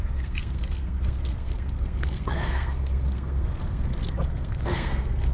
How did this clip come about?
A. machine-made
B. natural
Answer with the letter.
A